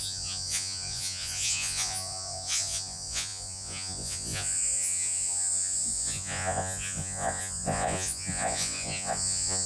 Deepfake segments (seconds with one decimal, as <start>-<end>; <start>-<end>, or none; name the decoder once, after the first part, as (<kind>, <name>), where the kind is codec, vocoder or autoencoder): 0.0-9.7 (vocoder, Vocos)